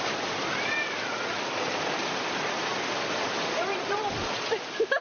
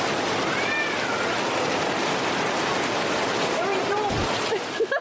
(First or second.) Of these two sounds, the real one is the second